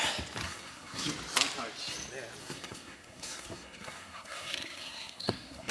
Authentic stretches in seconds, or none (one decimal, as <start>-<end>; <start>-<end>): 0.0-0.4; 1.1-2.4

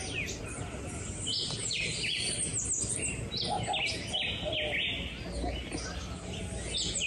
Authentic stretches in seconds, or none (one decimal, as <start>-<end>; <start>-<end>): 0.0-7.1

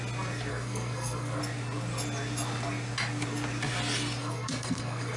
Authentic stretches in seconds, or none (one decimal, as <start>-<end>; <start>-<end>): 0.0-0.5; 1.4-4.2

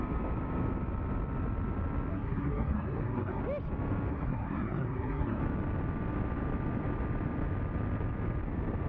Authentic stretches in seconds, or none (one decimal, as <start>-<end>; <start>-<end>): 0.0-2.1; 3.4-4.1; 5.4-8.9

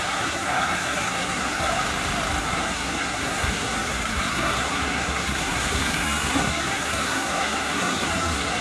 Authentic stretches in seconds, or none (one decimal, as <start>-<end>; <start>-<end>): 1.7-2.4